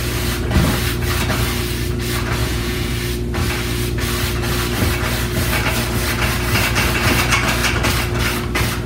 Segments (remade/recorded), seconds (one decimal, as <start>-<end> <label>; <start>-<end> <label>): 0.0-2.4 recorded; 2.4-2.9 remade; 2.9-8.9 recorded